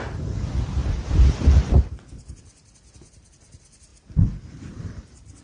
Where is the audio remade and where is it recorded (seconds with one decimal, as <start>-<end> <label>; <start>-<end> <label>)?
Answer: 0.0-5.4 recorded